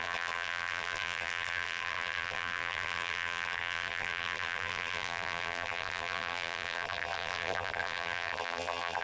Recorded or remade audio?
remade